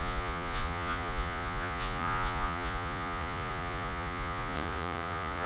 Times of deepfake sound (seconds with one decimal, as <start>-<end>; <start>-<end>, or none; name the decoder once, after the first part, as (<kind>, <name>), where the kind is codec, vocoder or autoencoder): 0.0-5.5 (vocoder, Vocos)